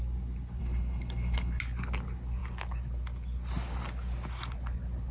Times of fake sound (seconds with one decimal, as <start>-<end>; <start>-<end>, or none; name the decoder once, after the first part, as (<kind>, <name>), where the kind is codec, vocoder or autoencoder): 0.6-1.6 (codec, HILCodec)